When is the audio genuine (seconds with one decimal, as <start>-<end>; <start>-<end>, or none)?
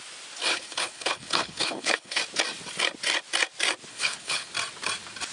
0.0-0.5; 2.2-3.9; 4.5-5.3